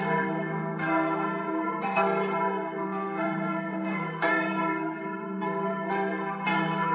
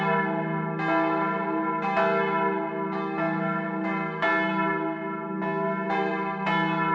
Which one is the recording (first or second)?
second